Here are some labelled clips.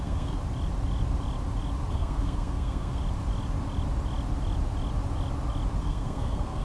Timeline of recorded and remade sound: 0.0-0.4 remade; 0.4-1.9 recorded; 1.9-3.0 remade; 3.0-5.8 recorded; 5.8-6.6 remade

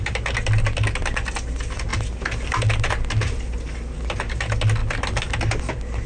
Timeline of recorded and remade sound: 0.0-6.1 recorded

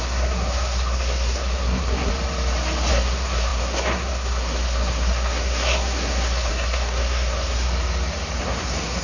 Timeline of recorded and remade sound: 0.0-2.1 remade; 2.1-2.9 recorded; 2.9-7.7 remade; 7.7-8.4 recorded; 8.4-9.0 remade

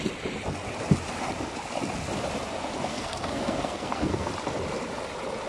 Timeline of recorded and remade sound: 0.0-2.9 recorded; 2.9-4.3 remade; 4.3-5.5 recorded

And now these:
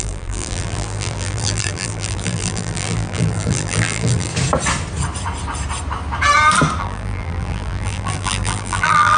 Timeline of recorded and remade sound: 0.0-4.3 remade; 4.3-6.8 recorded; 6.8-9.2 remade

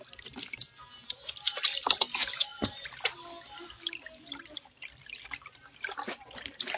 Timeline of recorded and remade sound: 0.0-6.8 recorded

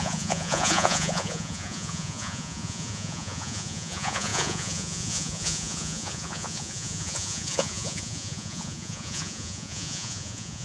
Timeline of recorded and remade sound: 0.0-10.6 remade

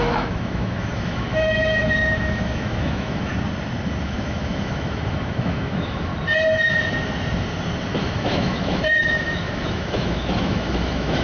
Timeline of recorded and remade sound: 0.0-3.3 remade; 3.3-4.0 recorded; 4.0-6.1 remade; 6.1-8.0 recorded; 8.0-11.2 remade